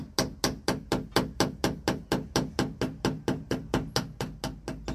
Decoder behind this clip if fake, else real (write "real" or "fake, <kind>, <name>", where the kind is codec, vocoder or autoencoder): real